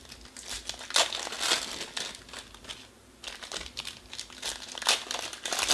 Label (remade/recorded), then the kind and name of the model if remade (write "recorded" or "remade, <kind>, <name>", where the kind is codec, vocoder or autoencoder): recorded